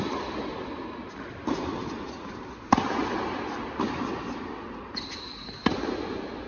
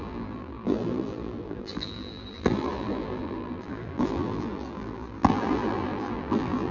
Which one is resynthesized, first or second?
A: second